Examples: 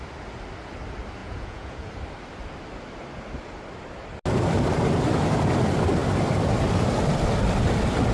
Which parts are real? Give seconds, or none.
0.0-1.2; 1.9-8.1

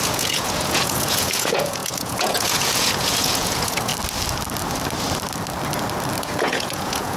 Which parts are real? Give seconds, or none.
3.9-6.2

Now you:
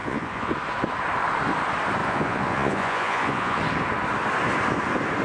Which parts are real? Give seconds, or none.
0.5-2.0; 3.6-5.2